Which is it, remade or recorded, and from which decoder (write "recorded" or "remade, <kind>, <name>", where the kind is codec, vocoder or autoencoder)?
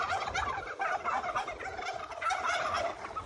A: recorded